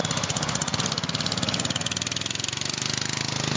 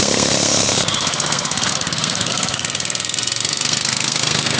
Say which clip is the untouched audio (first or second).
first